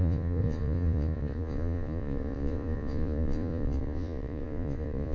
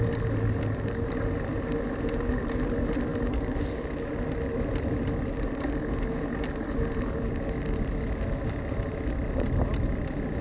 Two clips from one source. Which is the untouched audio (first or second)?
second